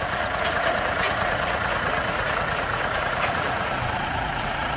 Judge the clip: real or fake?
fake